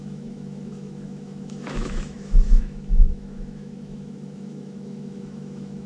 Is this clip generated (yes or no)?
yes